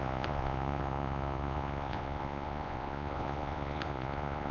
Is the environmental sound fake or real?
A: fake